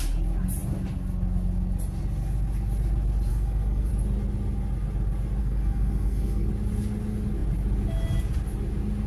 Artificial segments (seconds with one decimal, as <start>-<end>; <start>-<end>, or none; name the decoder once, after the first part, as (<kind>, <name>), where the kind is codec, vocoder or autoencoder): 3.3-3.9 (codec, SNAC); 5.4-6.5